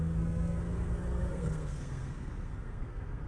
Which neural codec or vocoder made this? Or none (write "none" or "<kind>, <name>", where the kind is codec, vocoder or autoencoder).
codec, SNAC